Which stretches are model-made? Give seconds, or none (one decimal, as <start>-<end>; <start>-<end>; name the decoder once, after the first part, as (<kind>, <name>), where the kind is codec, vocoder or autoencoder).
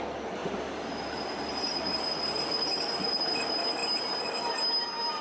none